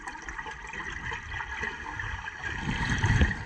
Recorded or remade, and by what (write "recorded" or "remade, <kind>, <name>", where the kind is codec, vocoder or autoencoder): recorded